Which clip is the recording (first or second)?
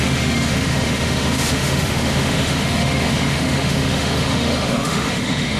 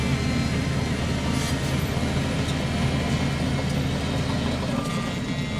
second